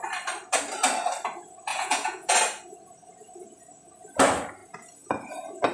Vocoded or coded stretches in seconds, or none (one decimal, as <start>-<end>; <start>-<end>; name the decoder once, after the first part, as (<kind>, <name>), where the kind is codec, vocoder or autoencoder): 1.7-2.3 (vocoder, Vocos)